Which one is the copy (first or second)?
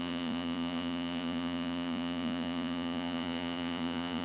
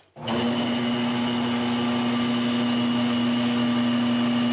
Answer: first